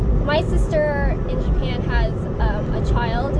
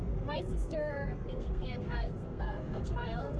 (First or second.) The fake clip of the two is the second